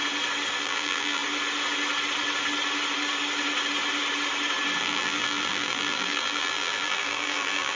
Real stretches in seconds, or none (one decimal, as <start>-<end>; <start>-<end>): 0.0-0.6; 1.2-4.8